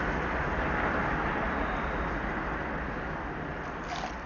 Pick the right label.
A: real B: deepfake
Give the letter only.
A